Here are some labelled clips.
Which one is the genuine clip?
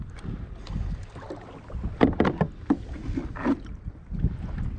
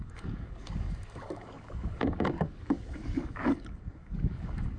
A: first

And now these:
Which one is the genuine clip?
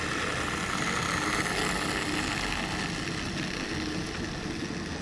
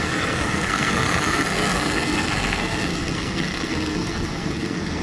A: first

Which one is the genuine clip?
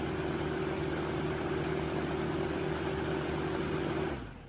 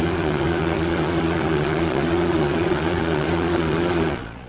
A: first